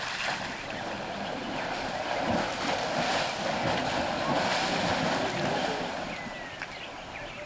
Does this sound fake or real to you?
real